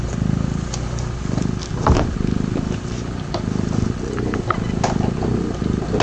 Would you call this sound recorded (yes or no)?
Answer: yes